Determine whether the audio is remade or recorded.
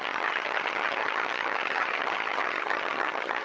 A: remade